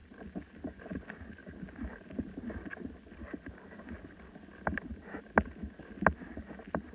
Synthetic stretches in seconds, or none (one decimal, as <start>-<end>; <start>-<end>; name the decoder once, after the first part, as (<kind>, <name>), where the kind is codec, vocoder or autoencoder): none